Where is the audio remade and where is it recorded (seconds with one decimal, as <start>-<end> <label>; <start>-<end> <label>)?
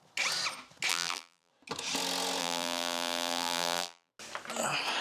0.0-0.9 recorded; 0.9-1.5 remade; 1.5-2.4 recorded; 2.4-4.1 remade; 4.1-5.0 recorded